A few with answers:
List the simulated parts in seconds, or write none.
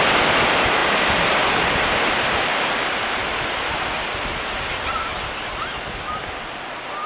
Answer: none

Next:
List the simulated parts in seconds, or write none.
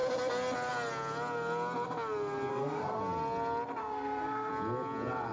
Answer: 2.5-3.0 (codec, SNAC); 3.8-4.5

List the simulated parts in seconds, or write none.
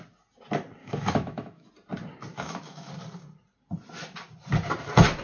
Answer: 0.8-1.7 (autoencoder, DAC-VAE); 2.3-2.9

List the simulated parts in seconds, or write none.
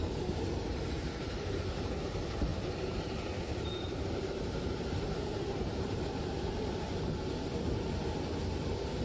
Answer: 0.7-2.1 (vocoder, BigVGAN v2); 2.5-6.0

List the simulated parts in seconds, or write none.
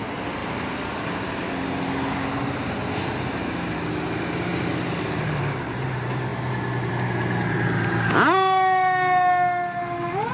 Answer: none